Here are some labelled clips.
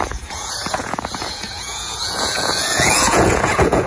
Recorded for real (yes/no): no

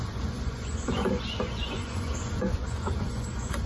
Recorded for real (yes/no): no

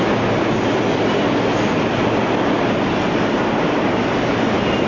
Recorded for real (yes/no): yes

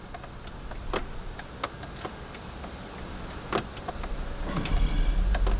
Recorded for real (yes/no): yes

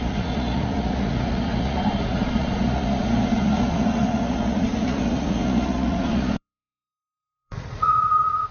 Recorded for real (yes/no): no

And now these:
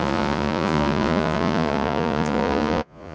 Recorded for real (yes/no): no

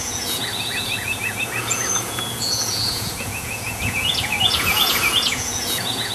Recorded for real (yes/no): no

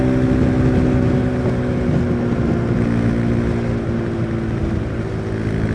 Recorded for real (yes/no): yes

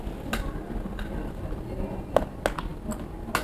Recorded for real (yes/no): yes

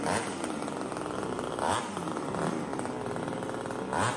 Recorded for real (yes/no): yes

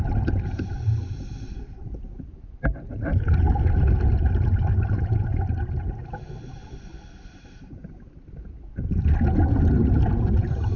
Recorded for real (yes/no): yes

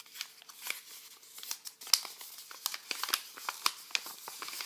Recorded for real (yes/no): yes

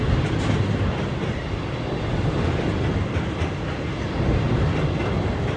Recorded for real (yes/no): yes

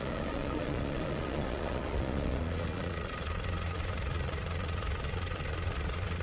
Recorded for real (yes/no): no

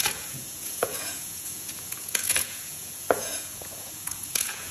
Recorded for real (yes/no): no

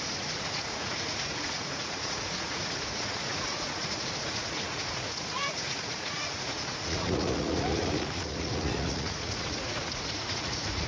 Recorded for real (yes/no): no